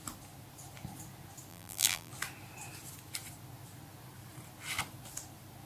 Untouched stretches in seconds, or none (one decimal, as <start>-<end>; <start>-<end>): 0.0-1.5; 2.1-5.7